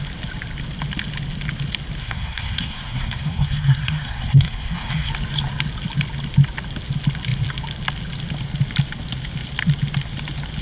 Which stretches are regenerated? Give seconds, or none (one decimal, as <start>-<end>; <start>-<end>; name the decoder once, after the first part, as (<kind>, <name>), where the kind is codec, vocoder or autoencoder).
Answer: 2.0-5.1 (codec, SNAC)